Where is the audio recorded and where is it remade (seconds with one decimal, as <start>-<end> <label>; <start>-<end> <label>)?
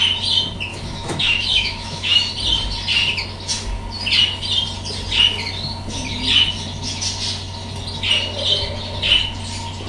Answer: 0.0-0.7 recorded; 0.7-2.3 remade; 2.3-9.9 recorded